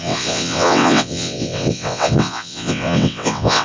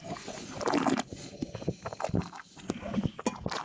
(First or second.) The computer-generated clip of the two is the first